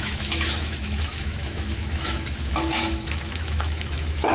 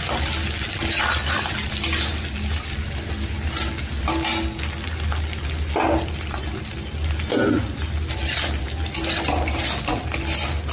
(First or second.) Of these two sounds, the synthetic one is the first